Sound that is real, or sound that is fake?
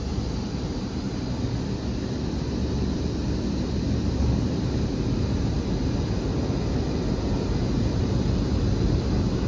real